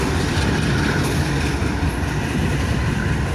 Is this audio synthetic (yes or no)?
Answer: yes